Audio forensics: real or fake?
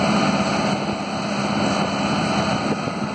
real